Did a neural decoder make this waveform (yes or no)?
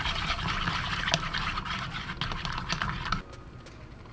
no